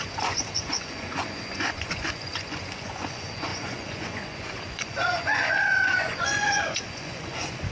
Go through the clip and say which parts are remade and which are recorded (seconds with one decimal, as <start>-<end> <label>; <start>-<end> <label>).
0.0-7.7 remade